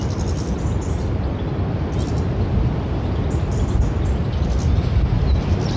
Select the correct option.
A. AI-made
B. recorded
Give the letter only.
B